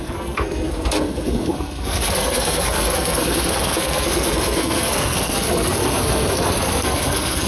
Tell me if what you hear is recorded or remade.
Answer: remade